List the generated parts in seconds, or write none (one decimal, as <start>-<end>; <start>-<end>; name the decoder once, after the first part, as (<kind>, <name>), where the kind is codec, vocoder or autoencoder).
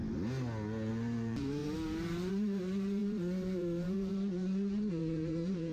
0.9-5.7 (vocoder, BigVGAN v2)